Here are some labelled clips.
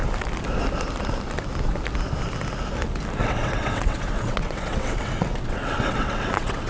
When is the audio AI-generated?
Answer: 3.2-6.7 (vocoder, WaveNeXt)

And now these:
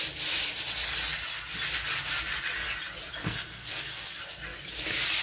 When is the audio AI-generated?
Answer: 3.2-4.1 (codec, SNAC)